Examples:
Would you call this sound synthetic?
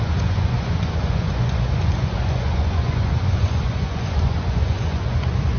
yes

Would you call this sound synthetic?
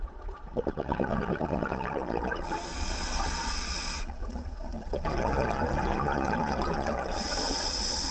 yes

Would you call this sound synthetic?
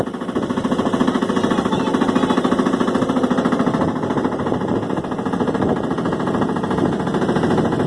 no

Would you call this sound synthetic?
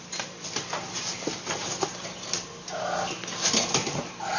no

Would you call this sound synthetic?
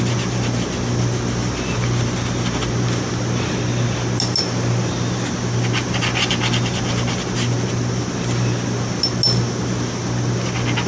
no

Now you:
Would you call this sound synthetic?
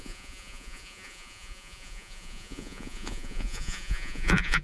yes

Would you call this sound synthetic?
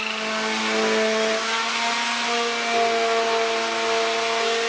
no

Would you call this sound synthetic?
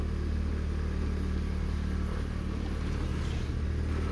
no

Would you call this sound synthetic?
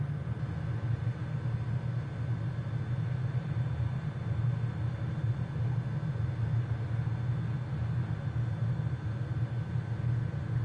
no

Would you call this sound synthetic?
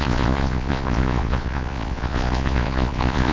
yes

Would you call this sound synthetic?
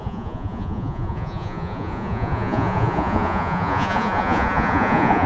yes